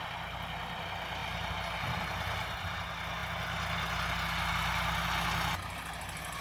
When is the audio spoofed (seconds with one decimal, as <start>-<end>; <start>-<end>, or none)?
none